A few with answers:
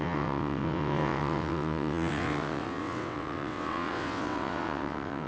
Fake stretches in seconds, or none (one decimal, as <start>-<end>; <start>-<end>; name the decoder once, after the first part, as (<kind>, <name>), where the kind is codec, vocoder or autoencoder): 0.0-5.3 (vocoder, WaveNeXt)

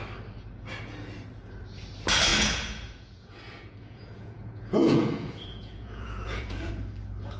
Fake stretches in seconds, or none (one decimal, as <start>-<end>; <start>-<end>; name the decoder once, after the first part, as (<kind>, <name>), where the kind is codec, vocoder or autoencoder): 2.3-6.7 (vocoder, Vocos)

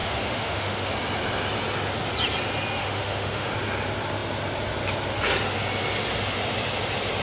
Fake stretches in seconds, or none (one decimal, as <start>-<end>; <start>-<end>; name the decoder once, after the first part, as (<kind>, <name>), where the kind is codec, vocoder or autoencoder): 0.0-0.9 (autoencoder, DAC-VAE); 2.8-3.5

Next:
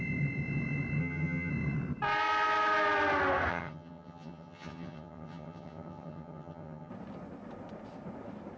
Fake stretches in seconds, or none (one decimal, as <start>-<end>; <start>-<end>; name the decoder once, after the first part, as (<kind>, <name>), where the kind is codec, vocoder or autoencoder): 1.0-1.5 (vocoder, HiFi-GAN); 3.5-6.9

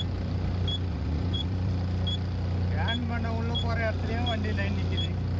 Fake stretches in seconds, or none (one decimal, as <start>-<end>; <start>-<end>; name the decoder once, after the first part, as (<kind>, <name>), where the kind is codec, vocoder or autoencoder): 0.9-1.7 (vocoder, Vocos)